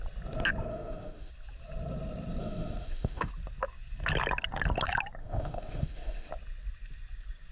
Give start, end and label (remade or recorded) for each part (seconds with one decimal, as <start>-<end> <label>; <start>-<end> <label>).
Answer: 0.0-0.7 recorded; 0.7-1.3 remade; 1.3-2.4 recorded; 2.4-3.3 remade; 3.3-5.2 recorded; 5.2-6.3 remade; 6.3-7.5 recorded

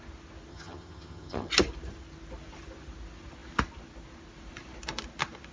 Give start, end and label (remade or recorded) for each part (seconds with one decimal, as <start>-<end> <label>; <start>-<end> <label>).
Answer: 0.0-0.5 recorded; 0.5-1.5 remade; 1.5-5.5 recorded

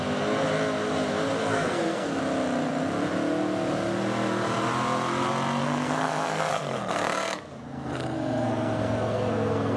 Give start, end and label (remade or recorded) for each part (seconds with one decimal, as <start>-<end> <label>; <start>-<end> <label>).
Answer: 0.0-1.4 recorded; 1.4-2.2 remade; 2.2-5.6 recorded; 5.6-9.8 remade

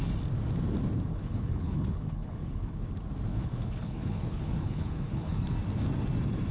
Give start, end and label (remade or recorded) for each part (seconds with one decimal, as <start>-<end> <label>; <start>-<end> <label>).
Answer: 0.0-1.1 recorded; 1.1-2.8 remade; 2.8-3.3 recorded; 3.3-5.4 remade; 5.4-6.5 recorded

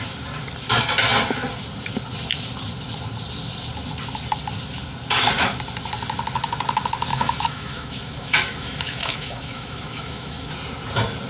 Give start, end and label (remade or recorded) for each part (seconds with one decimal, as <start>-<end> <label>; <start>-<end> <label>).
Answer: 0.0-7.1 recorded; 7.1-10.5 remade; 10.5-11.3 recorded

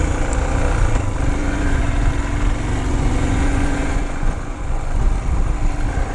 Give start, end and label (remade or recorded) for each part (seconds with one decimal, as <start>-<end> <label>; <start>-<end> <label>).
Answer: 0.0-1.4 recorded; 1.4-2.1 remade; 2.1-2.9 recorded; 2.9-5.0 remade; 5.0-6.1 recorded

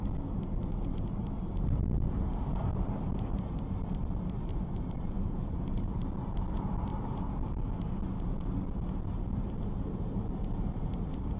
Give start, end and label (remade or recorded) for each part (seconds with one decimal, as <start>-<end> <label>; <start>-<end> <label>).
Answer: 0.0-4.5 recorded; 4.5-6.0 remade; 6.0-11.4 recorded

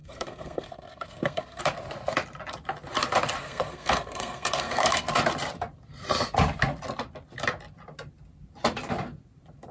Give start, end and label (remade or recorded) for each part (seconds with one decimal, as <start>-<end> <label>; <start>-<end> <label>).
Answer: 0.0-1.6 remade; 1.6-3.4 recorded; 3.4-5.1 remade; 5.1-9.7 recorded